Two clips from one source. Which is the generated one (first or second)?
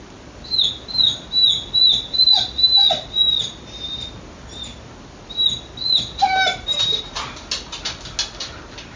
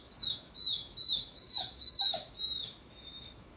second